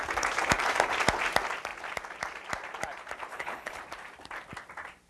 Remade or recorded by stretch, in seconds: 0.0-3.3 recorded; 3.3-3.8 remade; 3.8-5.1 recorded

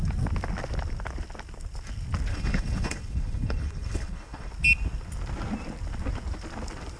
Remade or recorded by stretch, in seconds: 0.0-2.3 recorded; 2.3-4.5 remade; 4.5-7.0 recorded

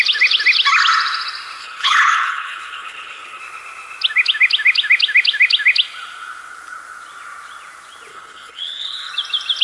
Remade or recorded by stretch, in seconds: 0.0-1.6 recorded; 1.6-3.4 remade; 3.4-8.1 recorded; 8.1-9.1 remade; 9.1-9.6 recorded